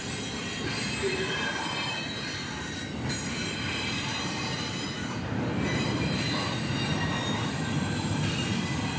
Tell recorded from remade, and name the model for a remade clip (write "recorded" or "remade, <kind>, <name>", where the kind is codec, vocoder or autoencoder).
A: recorded